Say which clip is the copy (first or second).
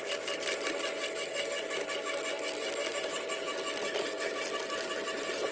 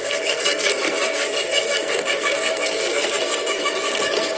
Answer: second